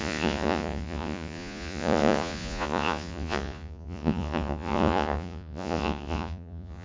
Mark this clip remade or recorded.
remade